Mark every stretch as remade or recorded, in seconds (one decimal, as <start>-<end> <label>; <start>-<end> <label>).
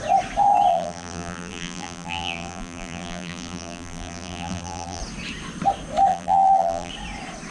0.0-0.7 recorded; 0.7-5.0 remade; 5.0-6.1 recorded; 6.1-6.9 remade; 6.9-7.5 recorded